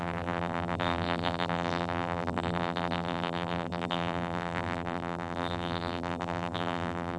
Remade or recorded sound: remade